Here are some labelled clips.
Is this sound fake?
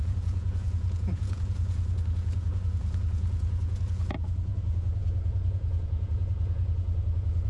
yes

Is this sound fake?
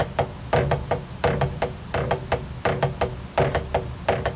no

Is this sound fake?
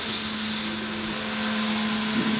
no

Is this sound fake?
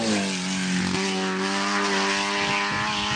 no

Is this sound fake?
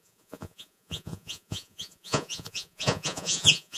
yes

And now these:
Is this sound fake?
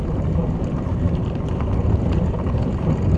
no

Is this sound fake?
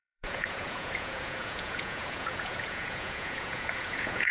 yes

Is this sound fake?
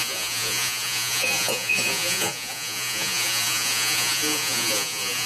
yes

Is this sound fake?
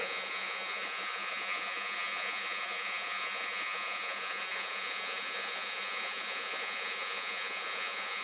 yes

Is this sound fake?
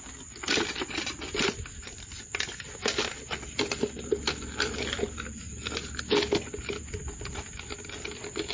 no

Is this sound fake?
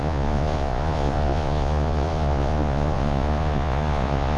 yes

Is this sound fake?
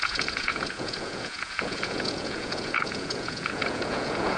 yes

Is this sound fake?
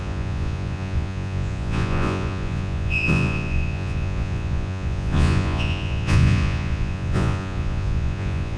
yes